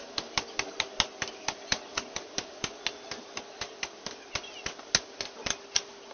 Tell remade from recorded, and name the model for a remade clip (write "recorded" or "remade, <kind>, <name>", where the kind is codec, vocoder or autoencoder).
recorded